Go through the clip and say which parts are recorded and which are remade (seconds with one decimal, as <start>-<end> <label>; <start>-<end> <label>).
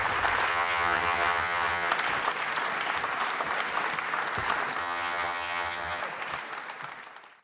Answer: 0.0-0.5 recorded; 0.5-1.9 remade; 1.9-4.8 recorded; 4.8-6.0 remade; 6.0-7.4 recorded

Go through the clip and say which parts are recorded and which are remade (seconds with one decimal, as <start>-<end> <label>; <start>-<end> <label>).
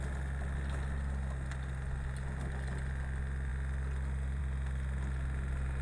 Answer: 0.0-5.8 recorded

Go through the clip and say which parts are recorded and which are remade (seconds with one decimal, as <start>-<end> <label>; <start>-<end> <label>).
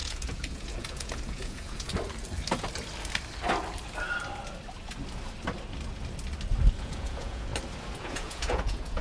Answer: 0.0-1.9 remade; 1.9-6.8 recorded; 6.8-7.5 remade; 7.5-8.0 recorded; 8.0-9.0 remade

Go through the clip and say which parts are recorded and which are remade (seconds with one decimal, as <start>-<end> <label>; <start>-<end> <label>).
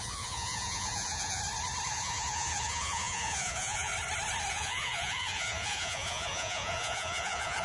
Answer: 0.0-1.4 remade; 1.4-1.9 recorded; 1.9-3.9 remade; 3.9-4.5 recorded; 4.5-7.6 remade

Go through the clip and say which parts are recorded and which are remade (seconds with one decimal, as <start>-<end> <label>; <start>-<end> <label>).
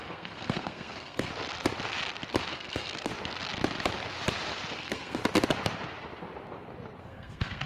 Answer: 0.0-1.3 remade; 1.3-2.5 recorded; 2.5-3.1 remade; 3.1-4.8 recorded; 4.8-5.2 remade; 5.2-7.0 recorded; 7.0-7.7 remade